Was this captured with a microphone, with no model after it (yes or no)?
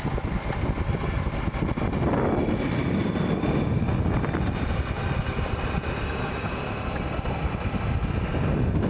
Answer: yes